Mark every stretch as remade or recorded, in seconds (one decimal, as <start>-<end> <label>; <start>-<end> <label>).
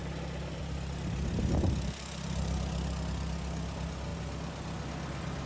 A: 0.0-5.5 recorded